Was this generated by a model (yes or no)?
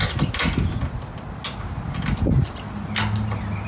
no